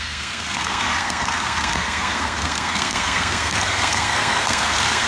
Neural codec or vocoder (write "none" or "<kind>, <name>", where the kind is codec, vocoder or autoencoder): codec, SNAC